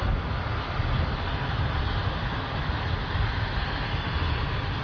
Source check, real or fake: real